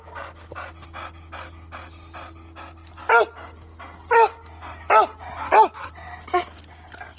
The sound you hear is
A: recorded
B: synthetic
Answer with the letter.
A